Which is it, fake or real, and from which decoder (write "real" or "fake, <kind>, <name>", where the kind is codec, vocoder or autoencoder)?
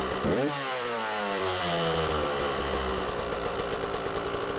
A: fake, vocoder, BigVGAN v2